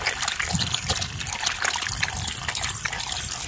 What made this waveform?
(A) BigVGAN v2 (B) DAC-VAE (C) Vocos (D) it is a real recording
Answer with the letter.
D